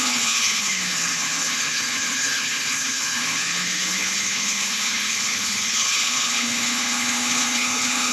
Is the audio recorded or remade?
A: remade